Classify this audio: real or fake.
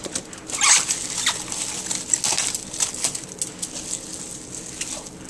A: real